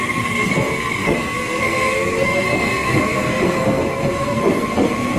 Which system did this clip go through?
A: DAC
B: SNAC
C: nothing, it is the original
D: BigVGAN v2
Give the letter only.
B